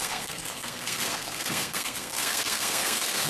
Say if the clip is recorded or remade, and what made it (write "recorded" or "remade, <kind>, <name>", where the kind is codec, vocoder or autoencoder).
remade, codec, SNAC